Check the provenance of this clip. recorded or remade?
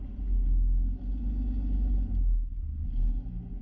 recorded